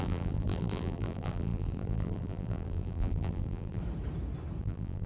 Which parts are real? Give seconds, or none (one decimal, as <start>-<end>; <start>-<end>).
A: 3.8-4.6